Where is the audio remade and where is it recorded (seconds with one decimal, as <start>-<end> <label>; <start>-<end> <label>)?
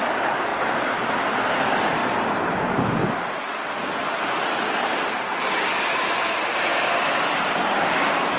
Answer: 0.0-0.5 remade; 0.5-1.6 recorded; 1.6-2.0 remade; 2.0-7.0 recorded; 7.0-8.4 remade